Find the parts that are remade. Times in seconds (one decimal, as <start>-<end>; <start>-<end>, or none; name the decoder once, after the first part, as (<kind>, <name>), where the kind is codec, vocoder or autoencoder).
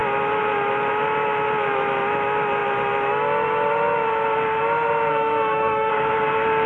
5.1-5.9 (autoencoder, DAC-VAE)